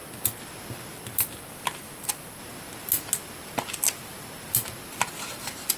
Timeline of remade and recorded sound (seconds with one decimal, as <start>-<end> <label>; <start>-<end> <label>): 0.0-5.8 recorded